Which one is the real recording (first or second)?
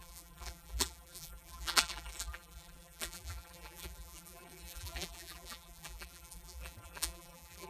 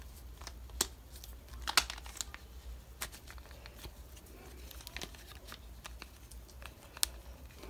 second